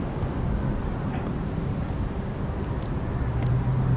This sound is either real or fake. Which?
real